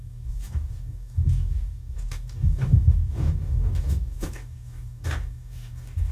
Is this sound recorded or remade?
remade